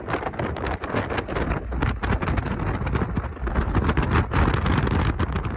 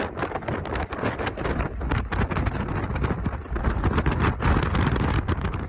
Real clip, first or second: first